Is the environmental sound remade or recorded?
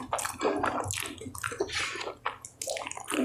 recorded